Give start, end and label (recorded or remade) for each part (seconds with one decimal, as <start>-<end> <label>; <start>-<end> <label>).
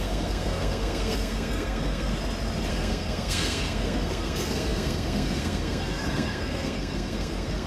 0.0-2.1 remade; 2.1-2.7 recorded; 2.7-7.7 remade